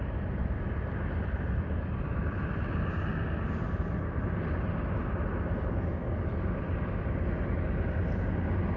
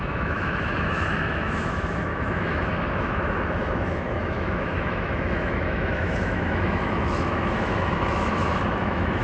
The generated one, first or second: second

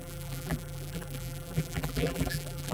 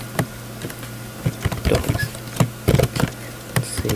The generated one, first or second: first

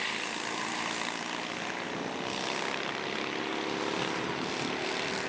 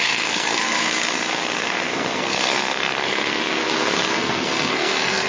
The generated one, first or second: second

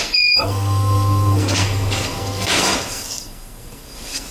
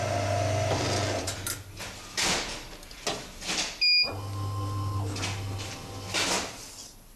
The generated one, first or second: first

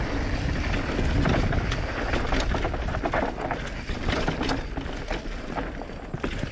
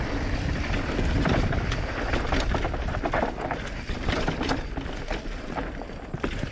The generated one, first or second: second